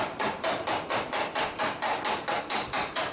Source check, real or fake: real